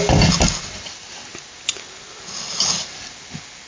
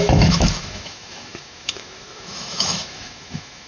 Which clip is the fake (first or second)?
second